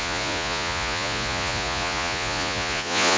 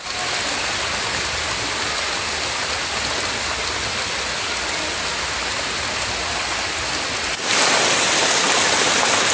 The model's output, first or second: first